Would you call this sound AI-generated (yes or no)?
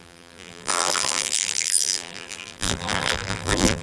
yes